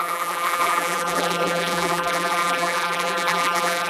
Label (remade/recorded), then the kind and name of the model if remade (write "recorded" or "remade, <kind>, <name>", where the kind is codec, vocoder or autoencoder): remade, vocoder, BigVGAN v2